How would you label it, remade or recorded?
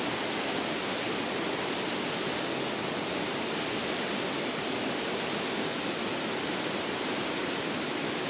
recorded